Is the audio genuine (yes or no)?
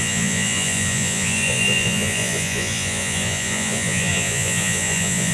no